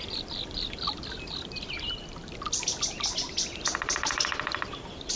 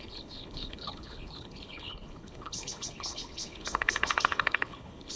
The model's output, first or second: second